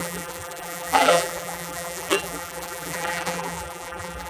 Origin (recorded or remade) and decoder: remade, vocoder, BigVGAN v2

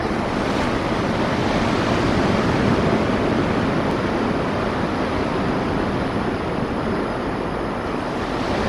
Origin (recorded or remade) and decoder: recorded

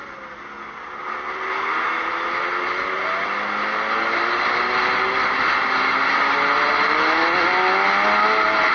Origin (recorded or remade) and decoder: recorded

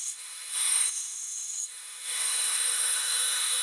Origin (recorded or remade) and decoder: remade, autoencoder, DAC-VAE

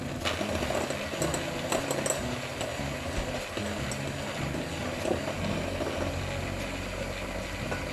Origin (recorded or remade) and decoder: recorded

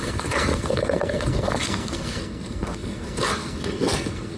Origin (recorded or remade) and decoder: remade, codec, SNAC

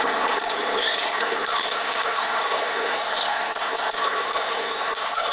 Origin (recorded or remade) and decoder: remade, codec, SNAC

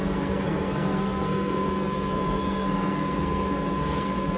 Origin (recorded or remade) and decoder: remade, codec, SNAC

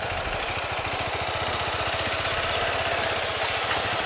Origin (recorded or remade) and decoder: recorded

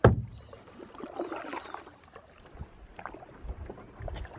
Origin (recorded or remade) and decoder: recorded